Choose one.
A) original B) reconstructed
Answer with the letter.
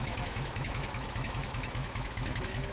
B